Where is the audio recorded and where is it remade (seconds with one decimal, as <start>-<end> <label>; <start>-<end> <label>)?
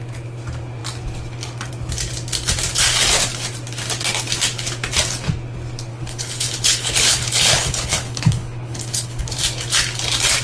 0.0-5.9 recorded; 5.9-9.4 remade; 9.4-10.4 recorded